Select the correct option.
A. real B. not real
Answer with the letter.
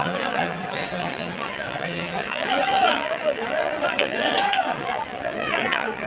B